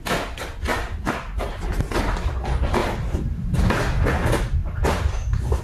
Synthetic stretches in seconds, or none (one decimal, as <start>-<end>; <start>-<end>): 0.7-2.0; 2.8-3.6; 4.6-5.6